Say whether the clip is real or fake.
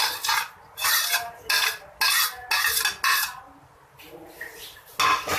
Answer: real